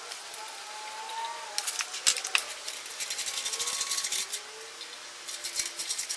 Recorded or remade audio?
recorded